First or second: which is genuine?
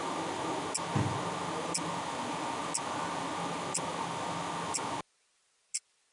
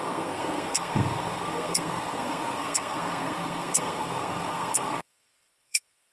first